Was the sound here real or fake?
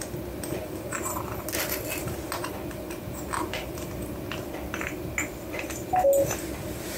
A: real